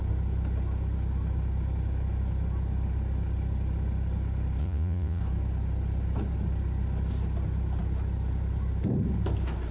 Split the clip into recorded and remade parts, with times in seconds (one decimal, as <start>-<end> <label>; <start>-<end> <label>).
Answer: 0.0-4.6 recorded; 4.6-5.2 remade; 5.2-9.7 recorded